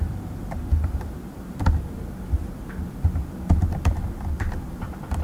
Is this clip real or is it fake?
fake